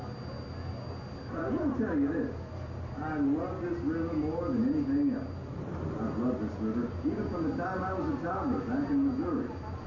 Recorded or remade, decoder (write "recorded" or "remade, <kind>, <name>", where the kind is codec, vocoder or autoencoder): recorded